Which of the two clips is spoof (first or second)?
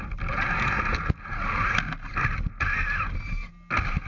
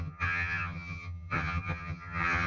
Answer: second